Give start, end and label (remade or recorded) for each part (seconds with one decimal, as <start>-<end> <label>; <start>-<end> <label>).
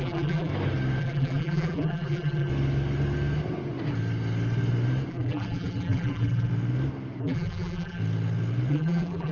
0.0-0.5 remade; 0.5-1.0 recorded; 1.0-2.5 remade; 2.5-5.1 recorded; 5.1-6.5 remade; 6.5-7.2 recorded; 7.2-8.0 remade; 8.0-8.7 recorded; 8.7-9.3 remade